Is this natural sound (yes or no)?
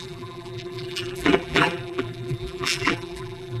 no